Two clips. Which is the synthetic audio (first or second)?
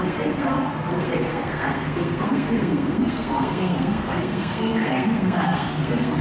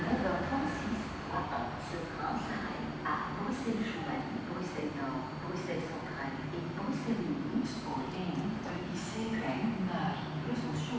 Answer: first